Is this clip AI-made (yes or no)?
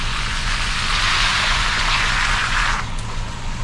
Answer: yes